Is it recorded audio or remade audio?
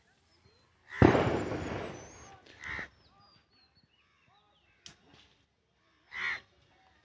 recorded